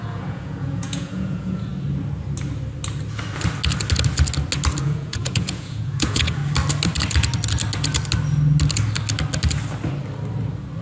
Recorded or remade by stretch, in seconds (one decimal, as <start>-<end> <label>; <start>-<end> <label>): 0.0-1.7 remade; 1.7-4.8 recorded; 4.8-6.4 remade; 6.4-10.8 recorded